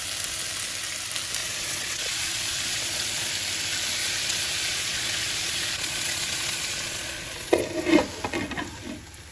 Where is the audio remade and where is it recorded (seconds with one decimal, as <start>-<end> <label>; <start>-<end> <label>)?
0.0-1.4 recorded; 1.4-3.3 remade; 3.3-4.0 recorded; 4.0-7.6 remade; 7.6-9.3 recorded